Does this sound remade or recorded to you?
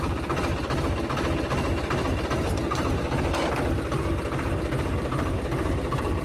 recorded